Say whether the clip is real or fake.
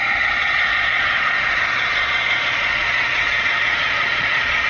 fake